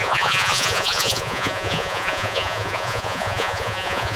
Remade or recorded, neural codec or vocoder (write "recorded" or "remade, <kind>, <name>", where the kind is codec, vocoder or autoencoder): remade, vocoder, Vocos